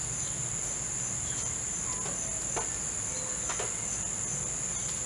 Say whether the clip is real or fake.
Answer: real